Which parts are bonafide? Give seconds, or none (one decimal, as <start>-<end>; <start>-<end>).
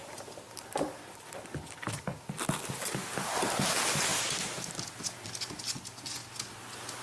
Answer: 1.3-4.1; 4.7-7.0